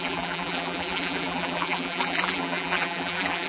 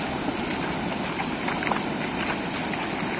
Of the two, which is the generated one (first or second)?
first